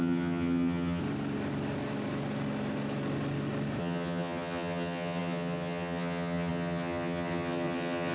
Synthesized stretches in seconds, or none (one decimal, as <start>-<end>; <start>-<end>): 0.0-1.0; 3.8-8.1